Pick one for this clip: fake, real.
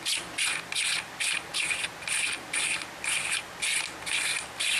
real